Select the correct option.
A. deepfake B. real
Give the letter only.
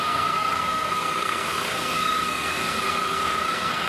A